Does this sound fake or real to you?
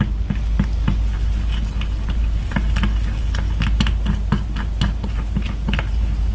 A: real